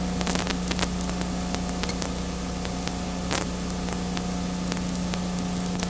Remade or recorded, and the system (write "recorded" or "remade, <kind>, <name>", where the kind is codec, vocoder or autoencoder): recorded